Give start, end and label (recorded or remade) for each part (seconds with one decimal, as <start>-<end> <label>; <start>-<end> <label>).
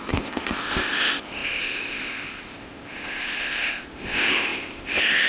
0.0-5.3 remade